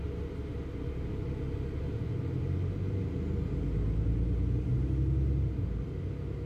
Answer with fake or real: real